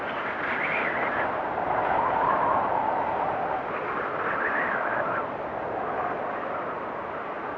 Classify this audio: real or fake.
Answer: real